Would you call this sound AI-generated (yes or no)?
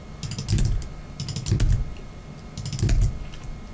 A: no